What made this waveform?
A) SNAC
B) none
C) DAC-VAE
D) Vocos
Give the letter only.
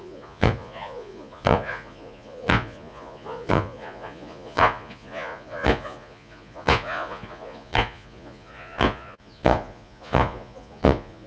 D